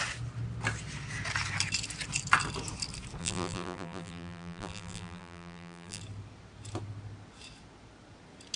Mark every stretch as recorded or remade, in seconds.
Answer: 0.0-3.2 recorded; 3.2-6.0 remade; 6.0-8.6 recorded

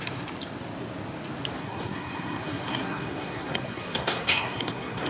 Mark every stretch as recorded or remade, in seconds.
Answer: 0.0-1.6 recorded; 1.6-5.1 remade

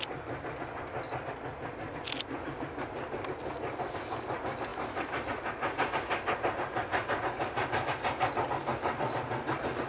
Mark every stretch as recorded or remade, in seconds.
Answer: 0.0-9.9 recorded

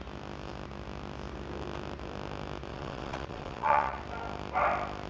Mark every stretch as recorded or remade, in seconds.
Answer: 0.0-2.7 recorded; 2.7-4.0 remade; 4.0-5.1 recorded

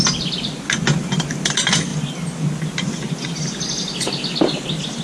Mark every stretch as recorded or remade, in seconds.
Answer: 0.0-5.0 recorded

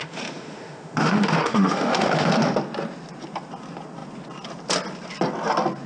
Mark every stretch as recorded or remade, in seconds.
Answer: 0.0-2.3 remade; 2.3-5.9 recorded

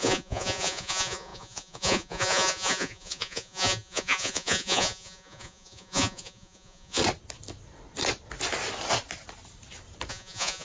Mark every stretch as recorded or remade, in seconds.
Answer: 0.0-7.0 remade; 7.0-10.1 recorded; 10.1-10.6 remade

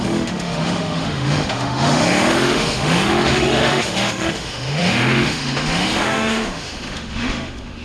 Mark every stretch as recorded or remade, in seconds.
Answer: 0.0-7.8 remade